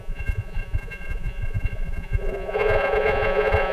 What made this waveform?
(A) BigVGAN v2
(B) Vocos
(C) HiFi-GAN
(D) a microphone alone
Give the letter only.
B